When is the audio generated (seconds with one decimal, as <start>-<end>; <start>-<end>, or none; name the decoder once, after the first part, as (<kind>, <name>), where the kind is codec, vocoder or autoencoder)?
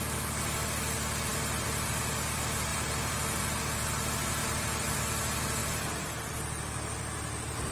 1.3-1.9 (vocoder, BigVGAN v2); 2.7-3.6; 4.4-5.0